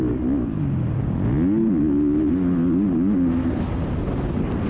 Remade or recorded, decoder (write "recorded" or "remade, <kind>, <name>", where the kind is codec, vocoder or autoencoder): recorded